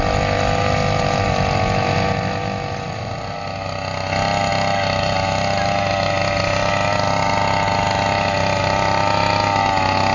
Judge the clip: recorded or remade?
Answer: recorded